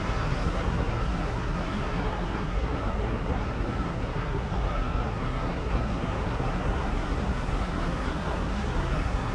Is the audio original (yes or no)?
no